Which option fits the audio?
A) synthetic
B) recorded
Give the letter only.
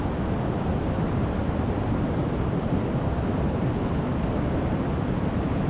B